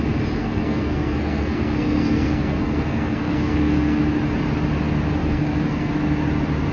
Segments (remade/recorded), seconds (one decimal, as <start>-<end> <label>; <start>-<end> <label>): 0.0-0.4 recorded; 0.4-4.0 remade; 4.0-5.2 recorded; 5.2-5.9 remade; 5.9-6.7 recorded